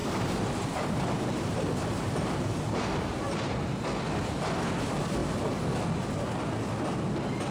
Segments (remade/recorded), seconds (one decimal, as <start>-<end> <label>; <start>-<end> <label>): 0.0-3.8 remade; 3.8-5.2 recorded; 5.2-5.7 remade; 5.7-7.5 recorded